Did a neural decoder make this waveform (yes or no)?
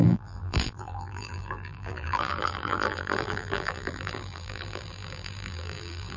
yes